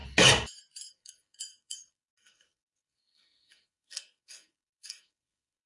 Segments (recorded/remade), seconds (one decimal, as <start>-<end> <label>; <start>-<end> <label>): 0.0-0.9 recorded; 0.9-5.7 remade